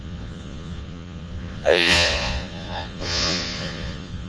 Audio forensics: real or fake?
fake